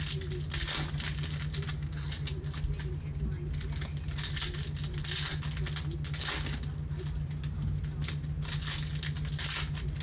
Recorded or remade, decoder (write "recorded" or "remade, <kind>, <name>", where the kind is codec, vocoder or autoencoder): recorded